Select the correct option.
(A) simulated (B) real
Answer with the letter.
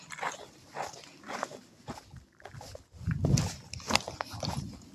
B